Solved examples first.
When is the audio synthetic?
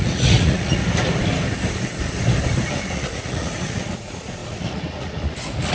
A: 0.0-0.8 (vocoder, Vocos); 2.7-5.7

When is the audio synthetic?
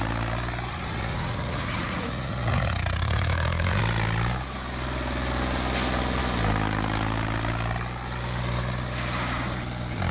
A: 0.7-3.8 (vocoder, Vocos)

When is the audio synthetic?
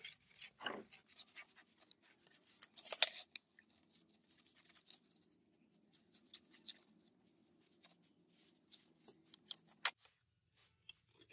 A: none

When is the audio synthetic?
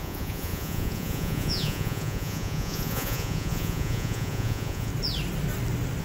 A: 0.0-4.9 (vocoder, Vocos)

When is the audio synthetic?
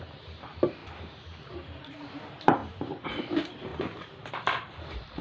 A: 0.0-5.2 (vocoder, BigVGAN v2)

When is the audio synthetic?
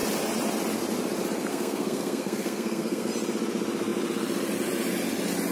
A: 1.5-3.1 (codec, SNAC)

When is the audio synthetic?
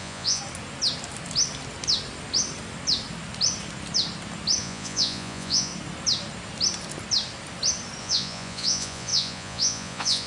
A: 0.0-0.4 (vocoder, Vocos); 4.6-5.7; 8.0-10.3